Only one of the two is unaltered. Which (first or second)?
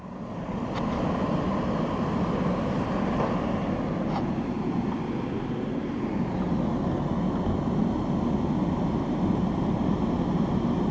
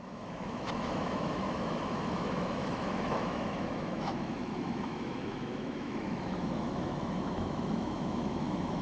first